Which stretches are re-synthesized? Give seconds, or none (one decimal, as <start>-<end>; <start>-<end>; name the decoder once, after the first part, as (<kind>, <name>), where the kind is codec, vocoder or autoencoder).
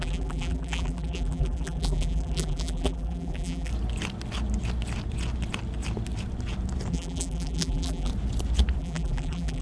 0.0-3.7 (vocoder, BigVGAN v2); 6.9-8.1; 8.8-9.6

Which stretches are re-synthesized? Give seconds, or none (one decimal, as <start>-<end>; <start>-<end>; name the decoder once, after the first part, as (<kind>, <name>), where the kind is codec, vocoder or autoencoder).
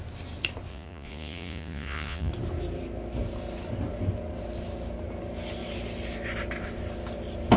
0.7-2.3 (vocoder, Vocos)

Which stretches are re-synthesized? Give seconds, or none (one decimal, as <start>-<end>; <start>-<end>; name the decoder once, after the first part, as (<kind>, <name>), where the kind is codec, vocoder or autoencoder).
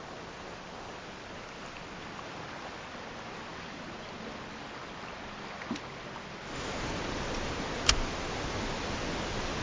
none